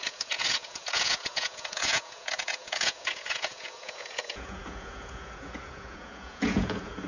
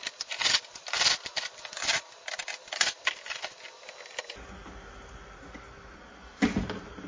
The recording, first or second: second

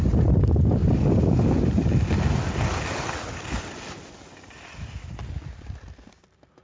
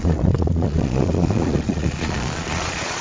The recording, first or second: first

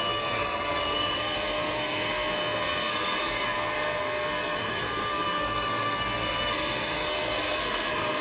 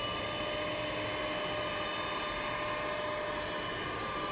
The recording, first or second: second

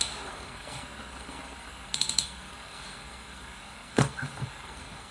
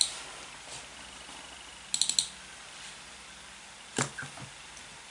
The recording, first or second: second